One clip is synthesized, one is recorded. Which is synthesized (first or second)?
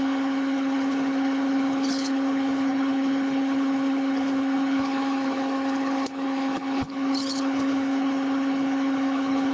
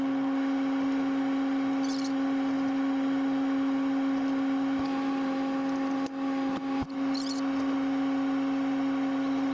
first